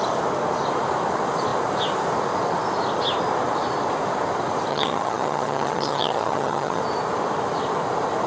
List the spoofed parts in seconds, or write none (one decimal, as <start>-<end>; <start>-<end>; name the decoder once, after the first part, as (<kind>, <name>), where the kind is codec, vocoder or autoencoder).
4.7-6.8 (vocoder, HiFi-GAN)